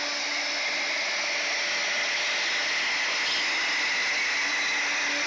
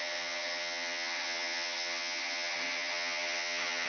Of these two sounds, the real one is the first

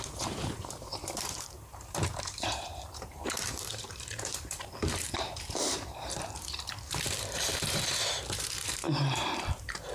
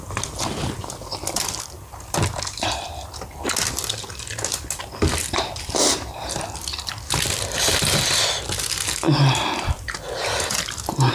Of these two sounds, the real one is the second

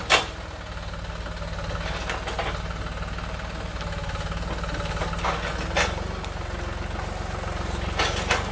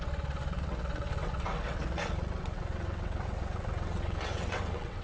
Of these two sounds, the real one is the first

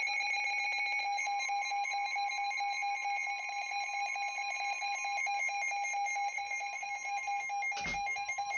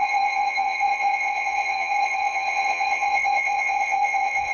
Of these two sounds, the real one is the first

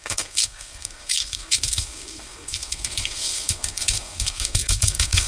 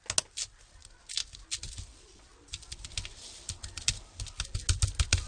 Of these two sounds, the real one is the second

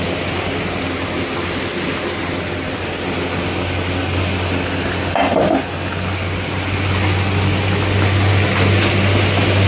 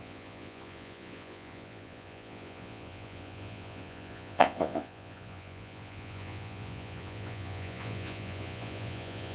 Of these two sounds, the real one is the first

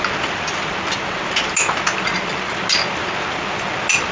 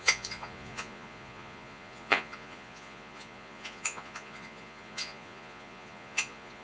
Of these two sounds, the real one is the first